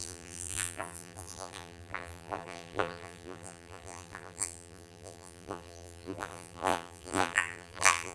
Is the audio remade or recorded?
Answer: remade